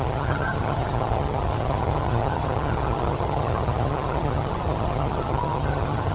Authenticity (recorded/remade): remade